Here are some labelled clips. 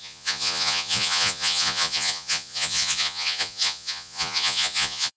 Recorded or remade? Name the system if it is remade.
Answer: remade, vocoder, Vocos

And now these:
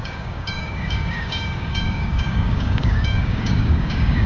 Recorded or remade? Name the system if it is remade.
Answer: remade, codec, DAC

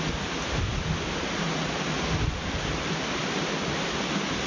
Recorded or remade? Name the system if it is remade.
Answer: recorded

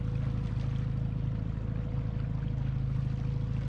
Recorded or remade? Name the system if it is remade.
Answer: recorded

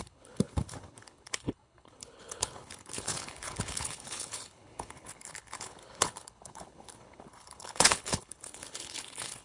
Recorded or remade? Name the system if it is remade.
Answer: remade, codec, HILCodec